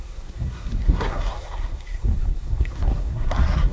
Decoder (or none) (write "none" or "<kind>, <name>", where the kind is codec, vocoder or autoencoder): codec, SNAC